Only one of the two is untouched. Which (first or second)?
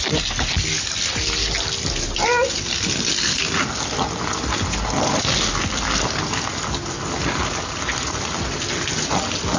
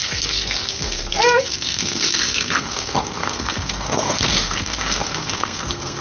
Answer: first